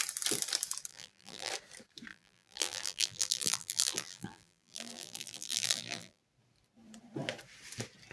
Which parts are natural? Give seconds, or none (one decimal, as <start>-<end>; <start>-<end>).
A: 0.0-0.9; 1.5-2.1; 6.2-8.1